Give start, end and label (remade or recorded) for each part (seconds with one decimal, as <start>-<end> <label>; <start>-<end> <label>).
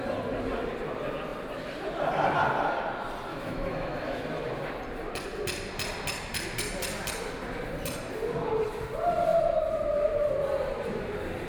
0.0-3.3 recorded; 3.3-4.2 remade; 4.2-11.5 recorded